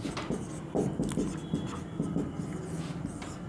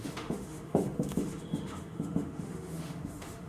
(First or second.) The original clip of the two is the first